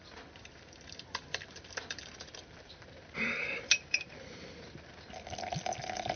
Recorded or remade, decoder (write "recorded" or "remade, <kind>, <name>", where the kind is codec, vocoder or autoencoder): remade, vocoder, BigVGAN v2